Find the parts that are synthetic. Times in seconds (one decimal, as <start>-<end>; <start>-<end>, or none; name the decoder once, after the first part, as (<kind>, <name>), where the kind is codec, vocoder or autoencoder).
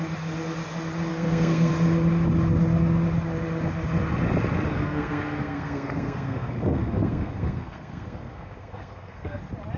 1.1-1.7 (codec, SNAC); 4.7-9.4